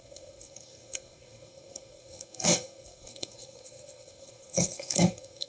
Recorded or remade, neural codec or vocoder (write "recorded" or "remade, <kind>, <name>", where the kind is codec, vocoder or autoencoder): remade, codec, SNAC